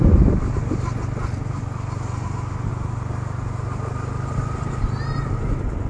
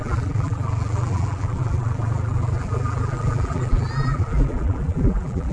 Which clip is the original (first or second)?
first